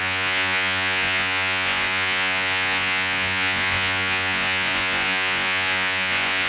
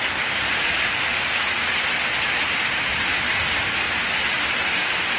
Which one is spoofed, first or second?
first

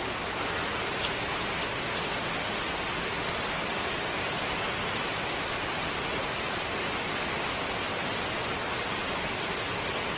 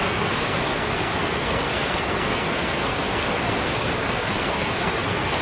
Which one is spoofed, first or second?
second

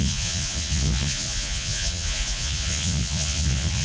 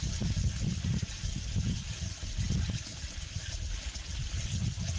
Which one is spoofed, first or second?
first